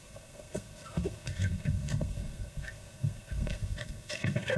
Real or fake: fake